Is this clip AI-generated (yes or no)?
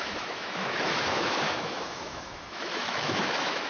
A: yes